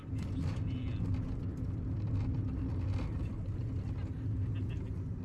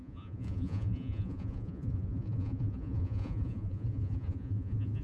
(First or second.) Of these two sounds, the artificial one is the second